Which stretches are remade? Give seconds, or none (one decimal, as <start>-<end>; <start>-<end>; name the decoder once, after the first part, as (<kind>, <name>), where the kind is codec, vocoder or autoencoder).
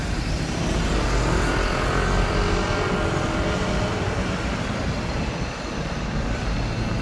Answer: none